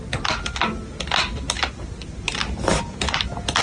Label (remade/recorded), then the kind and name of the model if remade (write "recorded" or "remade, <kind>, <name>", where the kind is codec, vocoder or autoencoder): recorded